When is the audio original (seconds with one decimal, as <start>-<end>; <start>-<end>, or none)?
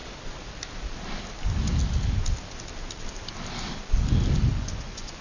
0.0-4.5